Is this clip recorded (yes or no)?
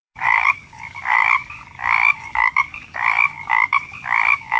no